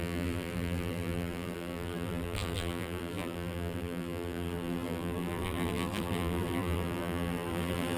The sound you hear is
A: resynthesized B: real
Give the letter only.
A